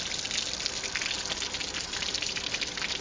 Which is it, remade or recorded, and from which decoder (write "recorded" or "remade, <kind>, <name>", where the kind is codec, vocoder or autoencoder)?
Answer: recorded